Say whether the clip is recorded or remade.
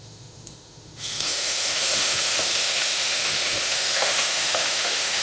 remade